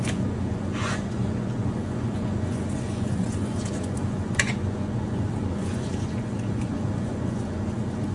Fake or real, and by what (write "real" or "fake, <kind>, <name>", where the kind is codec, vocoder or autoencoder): fake, vocoder, Vocos